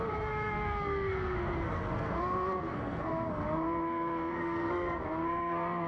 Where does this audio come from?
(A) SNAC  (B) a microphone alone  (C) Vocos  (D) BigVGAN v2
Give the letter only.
A